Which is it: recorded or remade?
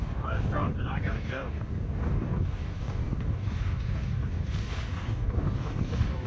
remade